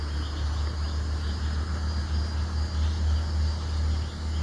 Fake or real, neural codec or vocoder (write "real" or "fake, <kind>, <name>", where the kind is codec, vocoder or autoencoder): real